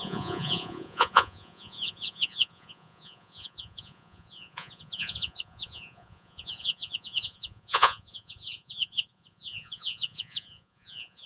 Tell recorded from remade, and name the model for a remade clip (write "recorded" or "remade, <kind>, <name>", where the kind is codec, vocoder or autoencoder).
remade, vocoder, Vocos